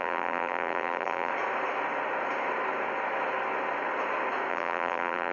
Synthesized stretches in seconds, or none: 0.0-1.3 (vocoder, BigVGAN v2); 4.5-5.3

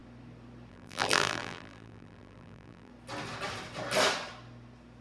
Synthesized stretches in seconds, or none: 0.7-2.9 (vocoder, BigVGAN v2)